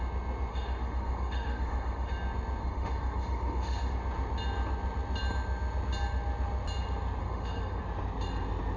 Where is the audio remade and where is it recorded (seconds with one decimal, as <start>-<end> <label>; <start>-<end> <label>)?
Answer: 0.0-0.5 recorded; 0.5-2.1 remade; 2.1-2.6 recorded; 2.6-3.9 remade; 3.9-7.2 recorded; 7.2-7.8 remade; 7.8-8.8 recorded